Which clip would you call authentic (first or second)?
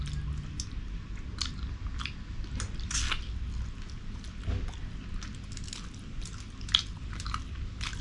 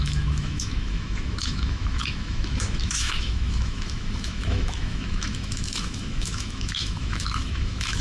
first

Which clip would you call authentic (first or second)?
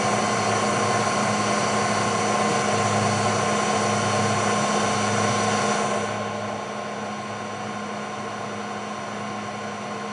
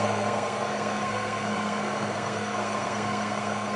first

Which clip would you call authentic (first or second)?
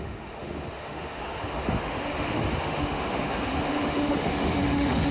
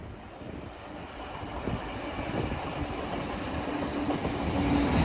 second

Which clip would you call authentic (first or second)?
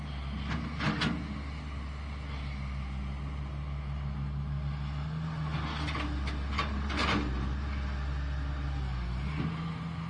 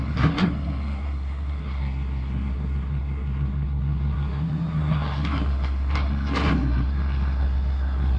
first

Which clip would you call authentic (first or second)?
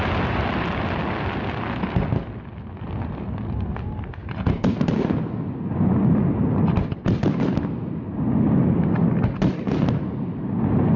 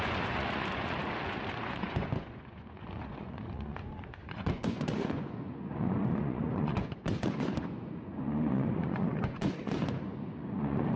first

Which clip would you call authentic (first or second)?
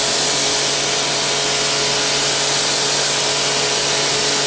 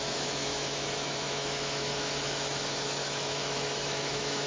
first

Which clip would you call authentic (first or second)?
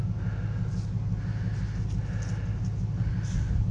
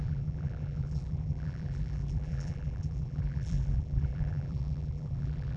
first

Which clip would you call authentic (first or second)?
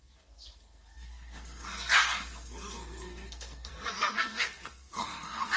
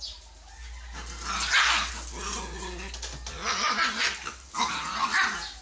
second